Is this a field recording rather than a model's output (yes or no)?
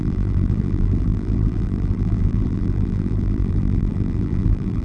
no